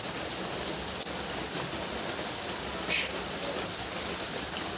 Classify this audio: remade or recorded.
recorded